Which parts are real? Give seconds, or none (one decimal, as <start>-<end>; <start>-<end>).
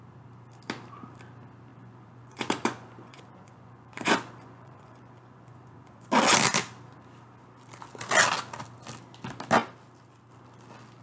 0.0-1.7; 6.1-11.0